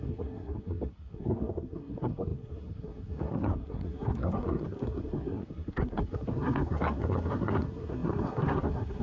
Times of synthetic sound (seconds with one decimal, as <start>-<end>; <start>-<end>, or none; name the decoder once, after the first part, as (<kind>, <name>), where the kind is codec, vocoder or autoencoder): 0.0-9.0 (codec, SNAC)